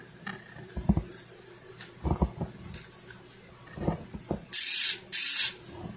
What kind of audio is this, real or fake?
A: real